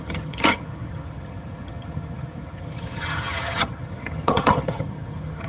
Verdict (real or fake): fake